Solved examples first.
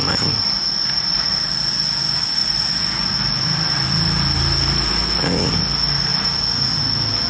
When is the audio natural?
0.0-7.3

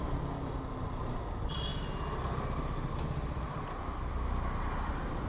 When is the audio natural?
0.0-5.3